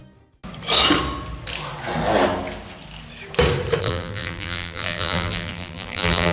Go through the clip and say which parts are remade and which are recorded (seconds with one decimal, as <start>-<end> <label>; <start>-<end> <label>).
0.0-3.8 recorded; 3.8-6.3 remade